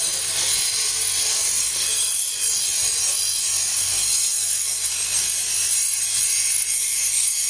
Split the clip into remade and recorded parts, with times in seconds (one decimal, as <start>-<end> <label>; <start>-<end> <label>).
0.0-1.6 recorded; 1.6-2.2 remade; 2.2-3.7 recorded; 3.7-5.2 remade; 5.2-6.7 recorded; 6.7-7.5 remade